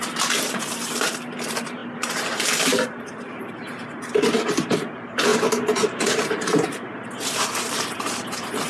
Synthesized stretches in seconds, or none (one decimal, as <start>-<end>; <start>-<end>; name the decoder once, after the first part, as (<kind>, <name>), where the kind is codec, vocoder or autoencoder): 0.0-8.7 (vocoder, BigVGAN v2)